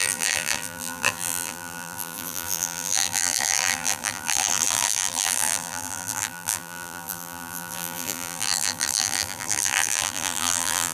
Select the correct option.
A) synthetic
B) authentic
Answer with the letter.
A